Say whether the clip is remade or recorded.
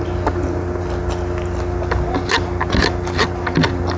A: recorded